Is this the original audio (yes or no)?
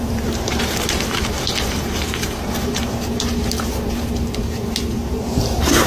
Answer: no